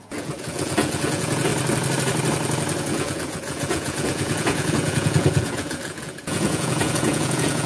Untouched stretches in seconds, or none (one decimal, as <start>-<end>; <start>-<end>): 1.5-2.8